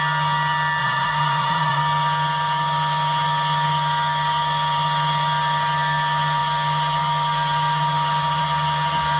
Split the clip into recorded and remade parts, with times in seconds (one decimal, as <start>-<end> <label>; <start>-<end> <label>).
0.0-0.8 recorded; 0.8-1.8 remade; 1.8-9.2 recorded